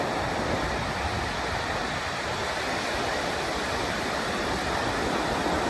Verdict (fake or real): real